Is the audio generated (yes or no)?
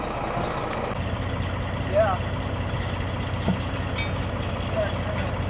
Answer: no